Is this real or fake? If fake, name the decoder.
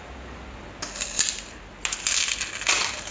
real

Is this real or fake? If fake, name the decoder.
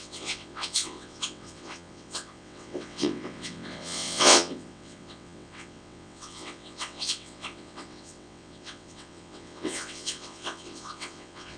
fake, vocoder, WaveNeXt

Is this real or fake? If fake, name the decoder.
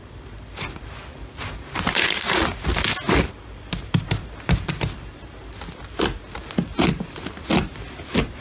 real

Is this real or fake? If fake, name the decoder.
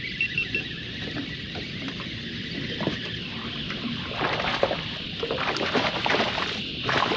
fake, vocoder, BigVGAN v2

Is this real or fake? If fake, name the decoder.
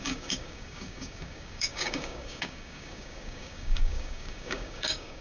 fake, codec, DAC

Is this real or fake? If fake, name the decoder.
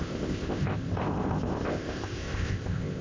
fake, codec, ZipCodec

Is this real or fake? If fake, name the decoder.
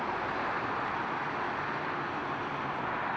real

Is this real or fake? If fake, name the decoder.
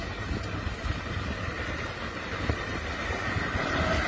real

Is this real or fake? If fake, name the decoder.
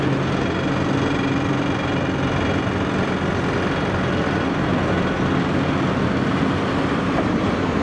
real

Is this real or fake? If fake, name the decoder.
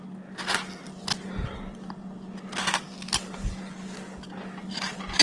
real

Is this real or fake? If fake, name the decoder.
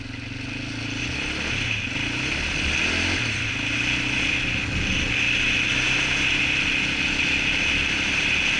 real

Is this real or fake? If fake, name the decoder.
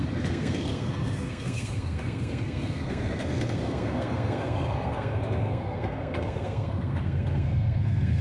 fake, codec, SNAC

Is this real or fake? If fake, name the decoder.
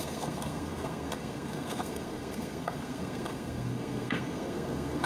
fake, codec, SNAC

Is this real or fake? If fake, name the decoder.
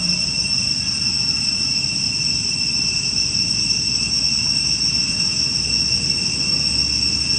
real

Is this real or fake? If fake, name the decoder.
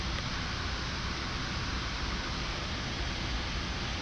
real